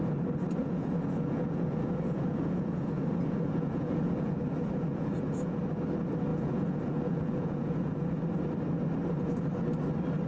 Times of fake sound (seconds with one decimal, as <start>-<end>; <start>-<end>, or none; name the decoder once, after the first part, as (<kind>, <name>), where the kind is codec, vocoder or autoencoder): 0.6-5.6 (vocoder, Vocos); 6.3-8.2

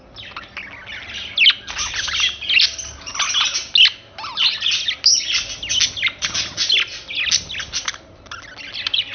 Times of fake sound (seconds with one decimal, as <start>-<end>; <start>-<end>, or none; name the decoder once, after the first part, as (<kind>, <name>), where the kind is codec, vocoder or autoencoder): none

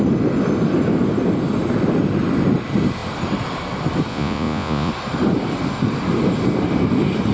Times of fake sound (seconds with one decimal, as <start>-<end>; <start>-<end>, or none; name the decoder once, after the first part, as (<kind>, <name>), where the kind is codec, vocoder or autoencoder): 4.1-4.9 (vocoder, Vocos)

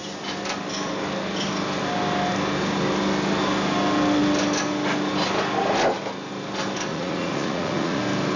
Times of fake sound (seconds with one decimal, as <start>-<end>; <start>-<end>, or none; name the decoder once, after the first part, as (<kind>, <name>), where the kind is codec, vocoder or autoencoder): 6.9-8.0 (vocoder, Vocos)

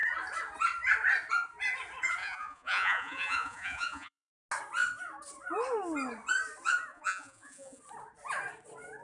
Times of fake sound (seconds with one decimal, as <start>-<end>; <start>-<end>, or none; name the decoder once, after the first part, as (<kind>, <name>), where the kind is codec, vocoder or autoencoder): 2.2-4.3 (vocoder, Vocos); 6.9-7.8

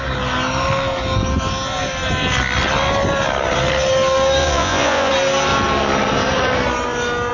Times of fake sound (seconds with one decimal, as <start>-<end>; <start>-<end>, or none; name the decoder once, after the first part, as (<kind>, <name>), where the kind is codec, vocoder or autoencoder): 4.4-5.1 (vocoder, Vocos)